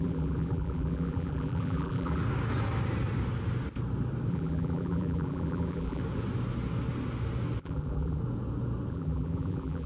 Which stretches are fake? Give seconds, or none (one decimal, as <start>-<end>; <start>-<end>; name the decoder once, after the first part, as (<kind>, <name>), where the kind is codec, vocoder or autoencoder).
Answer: 0.0-2.2 (vocoder, BigVGAN v2); 4.3-6.0; 7.6-8.2; 8.9-9.9